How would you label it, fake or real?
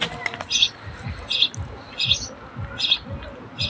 real